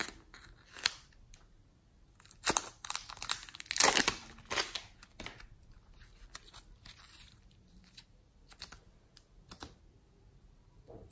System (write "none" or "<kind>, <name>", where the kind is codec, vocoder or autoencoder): none